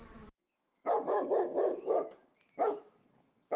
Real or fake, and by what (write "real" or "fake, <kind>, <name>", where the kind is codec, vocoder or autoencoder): fake, autoencoder, DAC-VAE